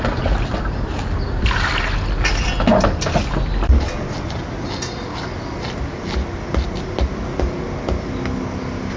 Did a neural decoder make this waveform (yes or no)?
no